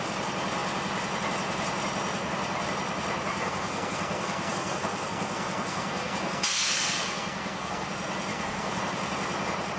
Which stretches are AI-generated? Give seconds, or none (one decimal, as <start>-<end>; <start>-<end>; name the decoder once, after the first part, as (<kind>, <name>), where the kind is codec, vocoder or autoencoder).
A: 3.3-7.9 (codec, SNAC); 8.3-8.8